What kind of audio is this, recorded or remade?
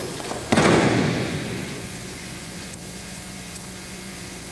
remade